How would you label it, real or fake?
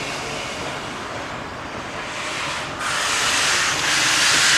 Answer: real